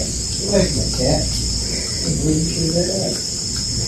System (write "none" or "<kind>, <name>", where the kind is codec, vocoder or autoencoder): none